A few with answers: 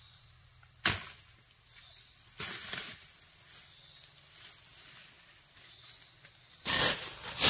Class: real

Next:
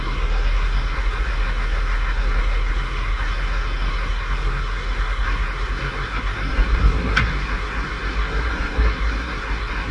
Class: fake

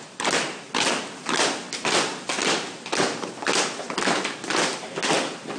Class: real